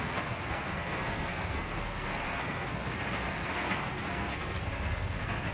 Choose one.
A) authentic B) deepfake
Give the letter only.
B